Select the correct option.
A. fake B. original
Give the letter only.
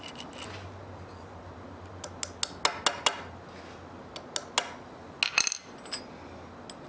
B